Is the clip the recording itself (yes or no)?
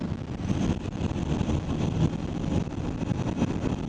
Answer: yes